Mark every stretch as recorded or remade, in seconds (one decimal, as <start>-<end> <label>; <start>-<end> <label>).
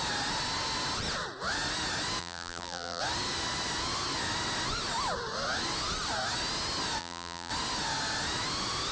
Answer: 0.0-2.2 recorded; 2.2-3.0 remade; 3.0-7.0 recorded; 7.0-7.5 remade; 7.5-8.9 recorded